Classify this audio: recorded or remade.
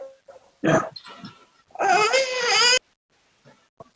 recorded